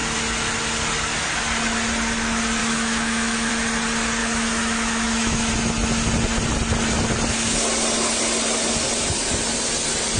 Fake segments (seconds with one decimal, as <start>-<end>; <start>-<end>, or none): 2.6-3.5; 4.2-5.5